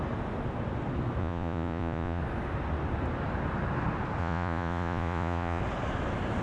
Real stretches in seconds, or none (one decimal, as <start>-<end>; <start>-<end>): 0.0-1.2; 2.2-4.2; 5.6-6.4